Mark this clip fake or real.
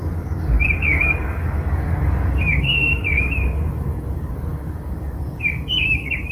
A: fake